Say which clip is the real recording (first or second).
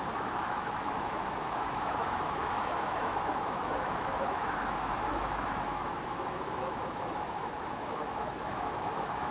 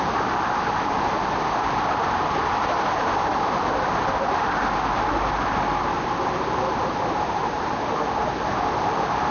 second